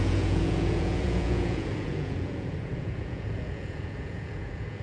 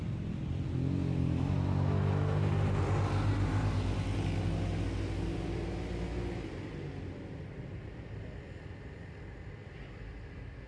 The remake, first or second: first